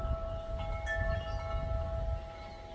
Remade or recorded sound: recorded